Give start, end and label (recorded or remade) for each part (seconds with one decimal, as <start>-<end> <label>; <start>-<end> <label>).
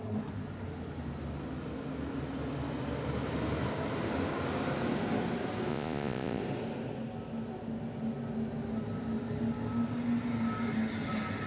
0.0-5.7 recorded; 5.7-6.4 remade; 6.4-11.5 recorded